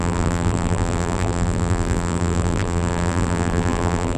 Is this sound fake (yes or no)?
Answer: yes